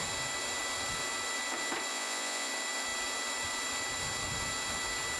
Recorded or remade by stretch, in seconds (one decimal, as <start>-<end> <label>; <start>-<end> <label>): 0.0-1.9 recorded; 1.9-2.5 remade; 2.5-5.2 recorded